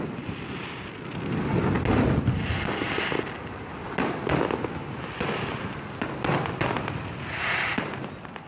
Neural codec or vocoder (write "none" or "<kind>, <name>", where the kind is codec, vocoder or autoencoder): none